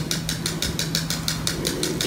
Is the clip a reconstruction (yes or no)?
no